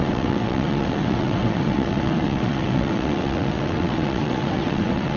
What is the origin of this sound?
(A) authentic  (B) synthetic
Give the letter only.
B